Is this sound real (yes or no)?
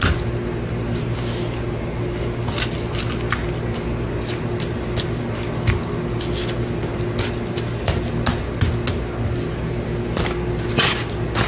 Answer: yes